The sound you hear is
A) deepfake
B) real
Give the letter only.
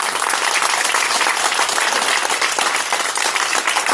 B